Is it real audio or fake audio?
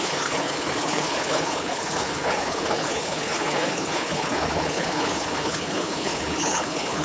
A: fake